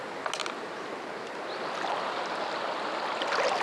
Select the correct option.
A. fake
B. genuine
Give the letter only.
B